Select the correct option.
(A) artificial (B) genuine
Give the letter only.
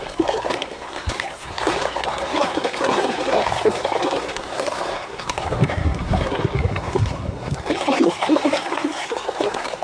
A